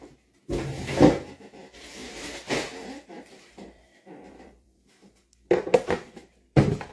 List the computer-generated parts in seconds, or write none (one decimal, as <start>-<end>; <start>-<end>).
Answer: 2.0-4.9; 6.2-6.9